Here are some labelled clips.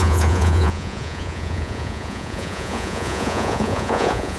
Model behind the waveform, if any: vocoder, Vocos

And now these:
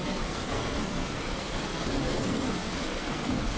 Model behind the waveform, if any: codec, SNAC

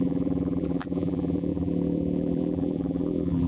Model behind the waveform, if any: vocoder, BigVGAN v2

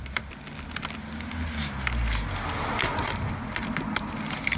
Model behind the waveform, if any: none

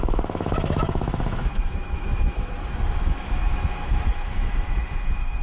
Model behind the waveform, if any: autoencoder, DAC-VAE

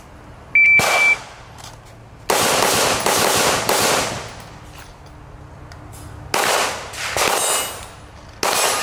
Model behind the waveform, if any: none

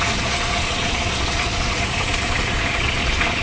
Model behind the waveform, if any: vocoder, Vocos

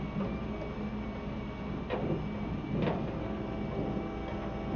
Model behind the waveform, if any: none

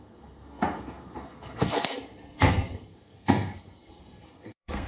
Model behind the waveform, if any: codec, SNAC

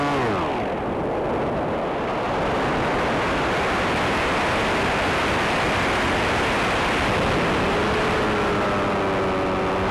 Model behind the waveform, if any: none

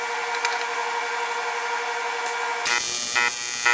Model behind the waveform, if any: none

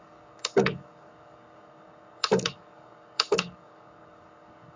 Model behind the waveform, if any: codec, DAC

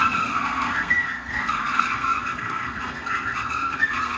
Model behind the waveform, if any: codec, SNAC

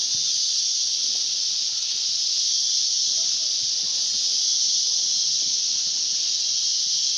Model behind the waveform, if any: none